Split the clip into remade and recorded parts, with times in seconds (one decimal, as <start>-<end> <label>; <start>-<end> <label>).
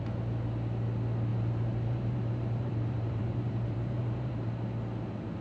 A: 0.0-1.3 recorded; 1.3-4.3 remade; 4.3-5.4 recorded